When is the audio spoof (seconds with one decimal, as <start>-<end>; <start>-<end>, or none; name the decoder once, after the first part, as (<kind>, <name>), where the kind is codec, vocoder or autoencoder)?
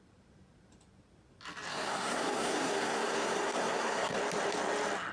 1.7-4.2 (codec, SNAC)